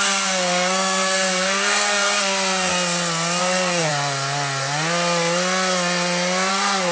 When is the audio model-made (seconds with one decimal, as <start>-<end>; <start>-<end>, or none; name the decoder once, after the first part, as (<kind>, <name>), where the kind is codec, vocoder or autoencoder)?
0.0-2.7 (codec, SNAC); 3.4-3.9; 6.5-6.9